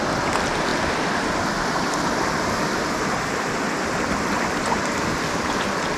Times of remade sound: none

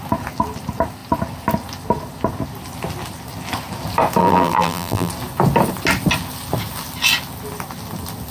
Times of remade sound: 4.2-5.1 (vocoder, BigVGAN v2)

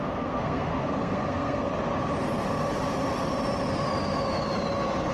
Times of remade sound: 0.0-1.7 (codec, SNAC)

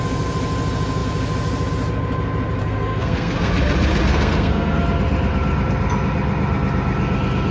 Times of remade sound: 2.6-3.5 (codec, SNAC); 4.1-4.8